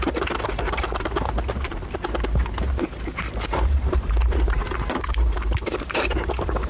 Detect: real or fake fake